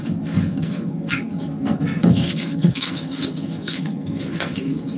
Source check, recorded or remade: remade